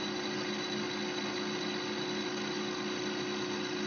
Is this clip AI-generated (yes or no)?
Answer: no